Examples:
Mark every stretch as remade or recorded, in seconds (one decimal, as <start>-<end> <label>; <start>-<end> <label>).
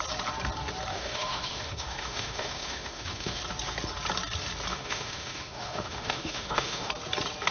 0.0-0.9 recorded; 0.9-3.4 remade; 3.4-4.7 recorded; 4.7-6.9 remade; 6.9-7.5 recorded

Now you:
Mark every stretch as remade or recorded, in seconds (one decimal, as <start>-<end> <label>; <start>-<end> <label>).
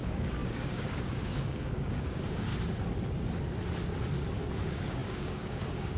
0.0-2.5 remade; 2.5-4.5 recorded; 4.5-6.0 remade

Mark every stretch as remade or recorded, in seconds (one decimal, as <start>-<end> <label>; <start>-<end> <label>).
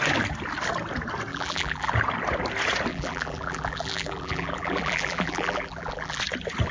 0.0-1.3 recorded; 1.3-1.9 remade; 1.9-2.9 recorded; 2.9-6.2 remade; 6.2-6.7 recorded